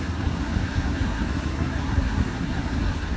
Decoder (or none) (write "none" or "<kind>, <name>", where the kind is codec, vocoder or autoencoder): codec, SNAC